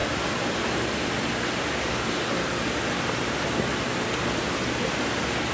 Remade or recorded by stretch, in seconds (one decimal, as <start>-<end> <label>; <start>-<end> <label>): 0.0-3.9 remade; 3.9-4.4 recorded; 4.4-5.5 remade